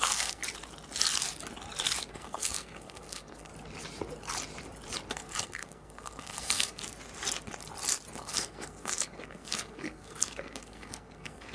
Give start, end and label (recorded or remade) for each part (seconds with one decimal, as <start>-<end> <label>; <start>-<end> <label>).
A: 0.0-0.4 remade; 0.4-2.1 recorded; 2.1-3.5 remade; 3.5-5.1 recorded; 5.1-6.8 remade; 6.8-8.2 recorded; 8.2-11.5 remade